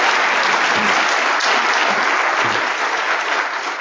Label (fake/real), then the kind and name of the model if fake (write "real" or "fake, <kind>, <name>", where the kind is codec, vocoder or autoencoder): real